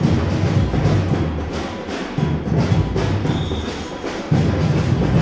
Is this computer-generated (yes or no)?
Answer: no